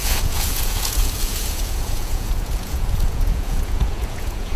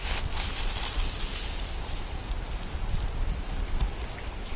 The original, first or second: second